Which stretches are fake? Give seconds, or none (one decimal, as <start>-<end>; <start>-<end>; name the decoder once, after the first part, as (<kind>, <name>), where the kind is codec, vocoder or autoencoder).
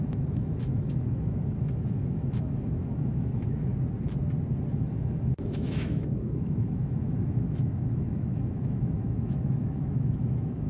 0.0-3.7 (autoencoder, DAC-VAE); 4.7-10.7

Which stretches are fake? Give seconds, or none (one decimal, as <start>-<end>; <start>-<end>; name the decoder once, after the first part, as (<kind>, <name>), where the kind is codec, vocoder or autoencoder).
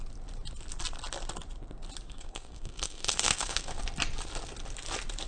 2.1-3.8 (codec, SNAC)